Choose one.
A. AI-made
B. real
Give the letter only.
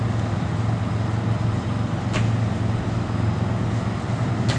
B